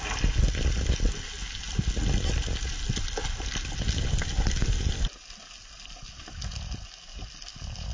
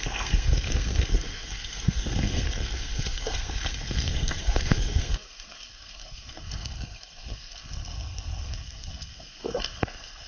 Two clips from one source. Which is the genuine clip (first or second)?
first